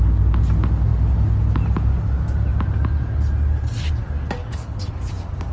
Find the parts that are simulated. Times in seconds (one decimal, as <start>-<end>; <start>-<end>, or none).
4.4-4.9